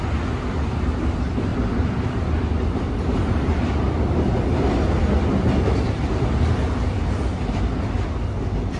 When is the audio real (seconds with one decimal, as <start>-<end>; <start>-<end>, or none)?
0.0-1.5; 4.7-8.8